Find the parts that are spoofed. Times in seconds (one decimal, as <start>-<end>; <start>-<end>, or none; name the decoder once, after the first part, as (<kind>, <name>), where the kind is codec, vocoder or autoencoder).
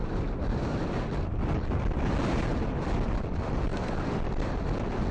none